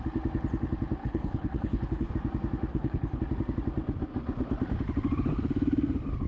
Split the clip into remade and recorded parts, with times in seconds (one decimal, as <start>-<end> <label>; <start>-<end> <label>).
0.0-1.0 recorded; 1.0-2.1 remade; 2.1-2.7 recorded; 2.7-3.2 remade; 3.2-6.3 recorded

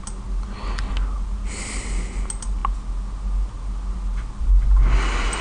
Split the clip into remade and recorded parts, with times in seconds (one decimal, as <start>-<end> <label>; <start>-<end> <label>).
0.0-5.4 recorded